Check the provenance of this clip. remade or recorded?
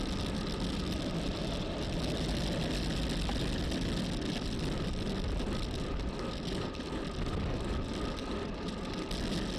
recorded